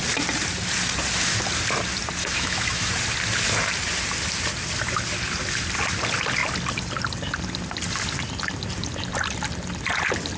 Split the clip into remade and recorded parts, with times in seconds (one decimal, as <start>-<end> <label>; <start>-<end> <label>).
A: 0.0-2.2 recorded; 2.2-2.9 remade; 2.9-10.4 recorded